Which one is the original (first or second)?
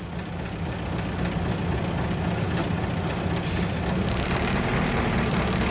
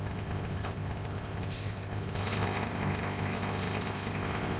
first